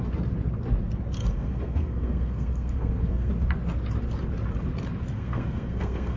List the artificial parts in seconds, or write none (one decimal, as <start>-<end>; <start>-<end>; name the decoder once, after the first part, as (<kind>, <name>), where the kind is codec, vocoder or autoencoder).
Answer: 1.2-3.3 (codec, SNAC); 5.1-6.2